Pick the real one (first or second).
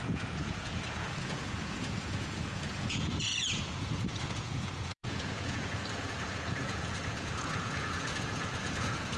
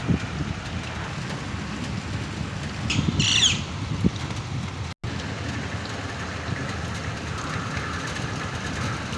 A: second